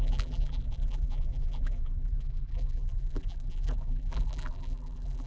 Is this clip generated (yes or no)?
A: yes